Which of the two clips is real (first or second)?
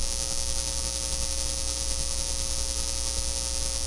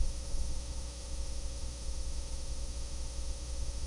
first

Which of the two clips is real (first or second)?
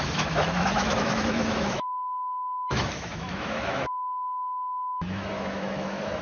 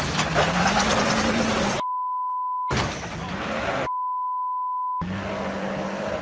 second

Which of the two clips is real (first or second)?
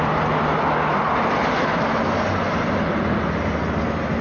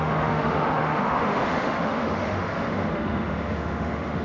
first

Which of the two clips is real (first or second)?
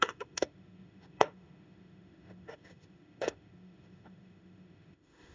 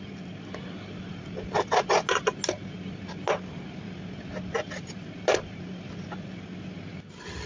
second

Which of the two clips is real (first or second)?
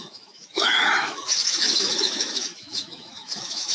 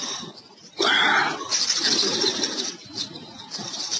second